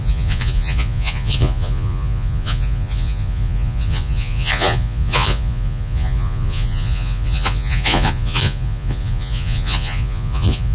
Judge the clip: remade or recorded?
remade